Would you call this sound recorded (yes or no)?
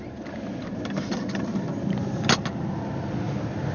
yes